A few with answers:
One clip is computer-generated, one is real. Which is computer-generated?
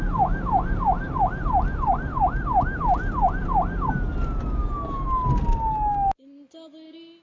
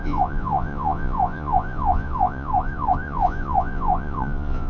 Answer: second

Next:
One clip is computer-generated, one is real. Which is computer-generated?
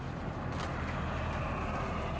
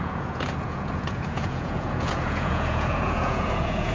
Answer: second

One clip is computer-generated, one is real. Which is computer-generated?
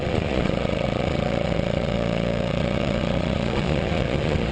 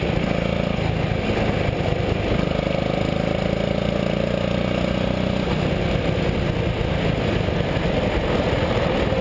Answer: first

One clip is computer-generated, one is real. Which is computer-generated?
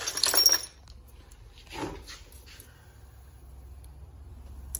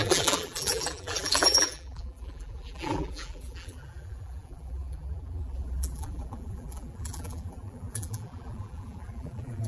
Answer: second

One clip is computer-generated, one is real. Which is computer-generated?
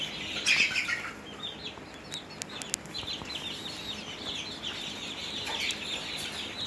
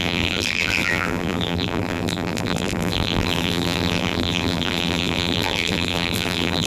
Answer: second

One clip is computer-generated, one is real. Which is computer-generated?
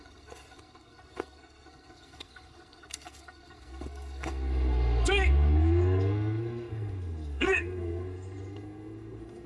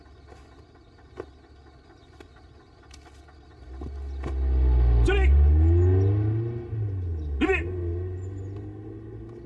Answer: first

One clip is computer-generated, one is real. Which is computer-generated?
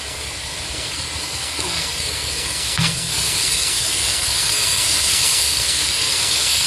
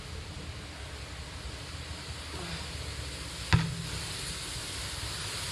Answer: first